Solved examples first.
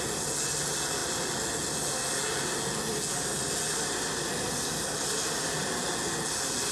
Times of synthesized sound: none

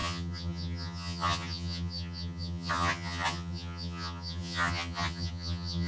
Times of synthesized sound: 0.0-5.9 (vocoder, HiFi-GAN)

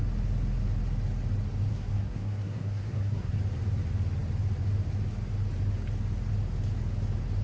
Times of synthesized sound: 1.7-3.4 (codec, SNAC)

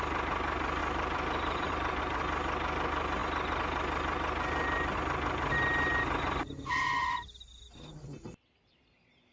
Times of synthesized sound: 0.8-2.0 (vocoder, BigVGAN v2)

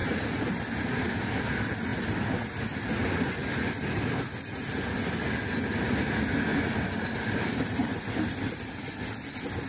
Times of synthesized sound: 6.5-8.1 (vocoder, BigVGAN v2)

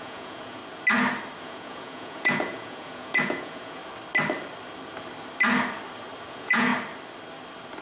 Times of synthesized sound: 0.0-0.6 (vocoder, Vocos); 1.4-3.8; 6.3-6.7

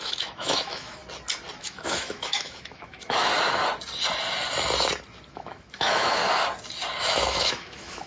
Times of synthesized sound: 0.0-1.0 (autoencoder, DAC-VAE); 1.6-3.3; 5.3-6.2; 7.0-8.1

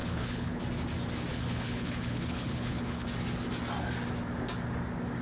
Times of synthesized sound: 0.0-0.6 (codec, HILCodec); 1.3-3.1